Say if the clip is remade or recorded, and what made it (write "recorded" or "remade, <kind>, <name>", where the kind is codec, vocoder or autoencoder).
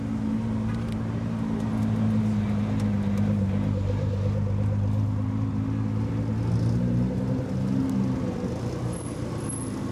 recorded